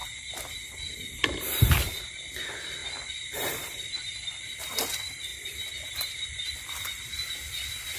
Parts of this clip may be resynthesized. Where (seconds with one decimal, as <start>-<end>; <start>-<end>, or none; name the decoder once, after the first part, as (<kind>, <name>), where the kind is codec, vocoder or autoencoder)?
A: 0.9-8.0 (vocoder, BigVGAN v2)

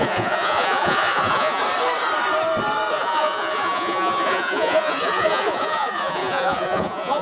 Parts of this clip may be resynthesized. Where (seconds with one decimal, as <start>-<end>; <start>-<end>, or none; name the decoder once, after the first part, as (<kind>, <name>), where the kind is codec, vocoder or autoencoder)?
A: 0.0-1.6 (vocoder, Vocos); 2.9-7.2

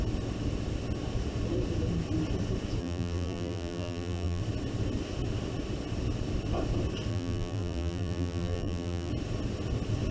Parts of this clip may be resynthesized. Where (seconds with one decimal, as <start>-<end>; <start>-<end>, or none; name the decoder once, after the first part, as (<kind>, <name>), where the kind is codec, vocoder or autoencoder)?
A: 2.8-4.4 (vocoder, BigVGAN v2); 7.1-9.1

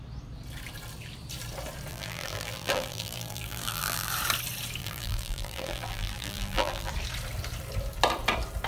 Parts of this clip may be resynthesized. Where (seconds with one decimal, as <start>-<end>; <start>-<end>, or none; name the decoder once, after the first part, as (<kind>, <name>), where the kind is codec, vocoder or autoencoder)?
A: 1.9-4.1 (vocoder, BigVGAN v2); 4.8-6.9

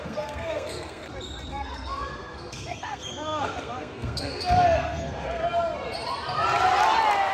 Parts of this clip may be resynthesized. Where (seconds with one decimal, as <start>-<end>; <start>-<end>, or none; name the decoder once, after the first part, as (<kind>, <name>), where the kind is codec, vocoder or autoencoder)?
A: 0.0-1.0 (codec, SNAC); 1.5-5.4